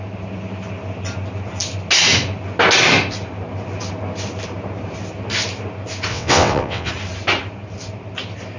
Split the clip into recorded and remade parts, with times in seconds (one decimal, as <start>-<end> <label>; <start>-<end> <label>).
0.0-6.1 recorded; 6.1-6.9 remade; 6.9-8.6 recorded